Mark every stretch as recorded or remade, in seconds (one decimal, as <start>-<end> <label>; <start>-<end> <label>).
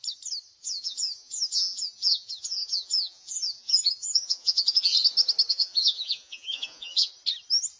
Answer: 0.0-0.6 recorded; 0.6-4.9 remade; 4.9-5.5 recorded; 5.5-7.1 remade; 7.1-7.8 recorded